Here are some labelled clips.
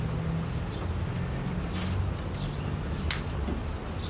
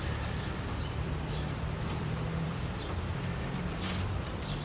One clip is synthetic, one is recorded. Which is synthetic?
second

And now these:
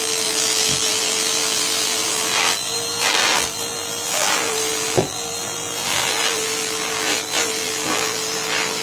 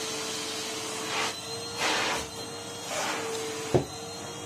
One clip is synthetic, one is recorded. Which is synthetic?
first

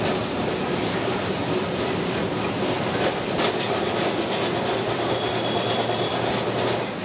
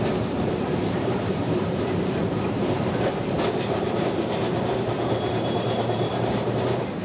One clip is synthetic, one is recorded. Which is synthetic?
second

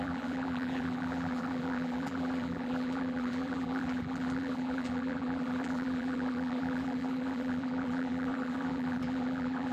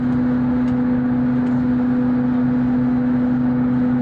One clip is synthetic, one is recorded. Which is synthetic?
first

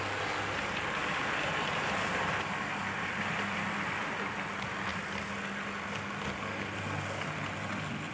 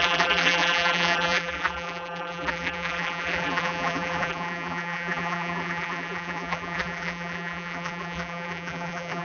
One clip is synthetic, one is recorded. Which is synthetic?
second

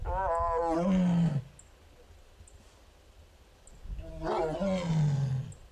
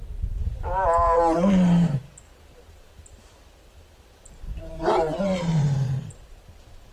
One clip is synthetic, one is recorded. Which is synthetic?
second